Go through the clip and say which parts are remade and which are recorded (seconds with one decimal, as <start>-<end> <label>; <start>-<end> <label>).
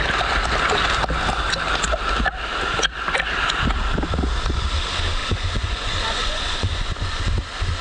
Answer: 0.0-5.2 recorded; 5.2-7.2 remade; 7.2-7.8 recorded